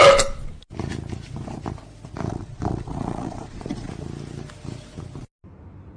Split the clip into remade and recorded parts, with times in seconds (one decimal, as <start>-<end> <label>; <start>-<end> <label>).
0.0-2.3 recorded; 2.3-3.9 remade; 3.9-6.0 recorded